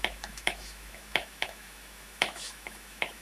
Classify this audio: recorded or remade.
remade